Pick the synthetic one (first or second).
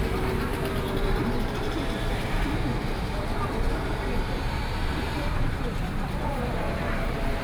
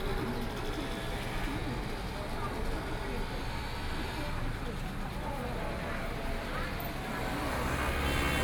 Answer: first